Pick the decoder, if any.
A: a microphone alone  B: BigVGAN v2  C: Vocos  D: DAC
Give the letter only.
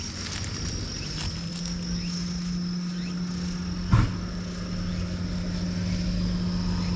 A